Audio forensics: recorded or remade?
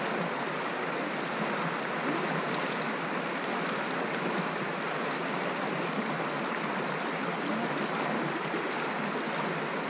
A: recorded